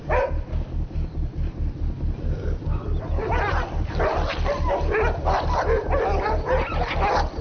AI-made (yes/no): no